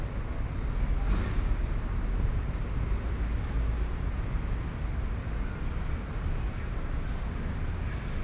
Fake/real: real